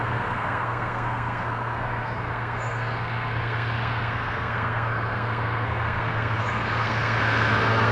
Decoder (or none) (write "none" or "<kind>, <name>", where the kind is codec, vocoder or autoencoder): codec, SNAC